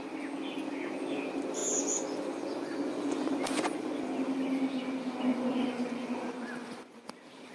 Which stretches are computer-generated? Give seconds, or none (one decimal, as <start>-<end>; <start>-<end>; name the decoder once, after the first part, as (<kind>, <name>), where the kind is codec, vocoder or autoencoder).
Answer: 1.6-4.0 (vocoder, Vocos); 5.3-7.1